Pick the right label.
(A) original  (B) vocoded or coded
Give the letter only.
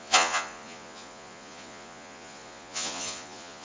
B